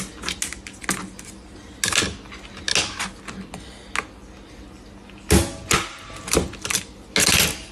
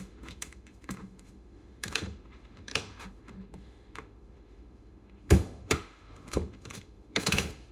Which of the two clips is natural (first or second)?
first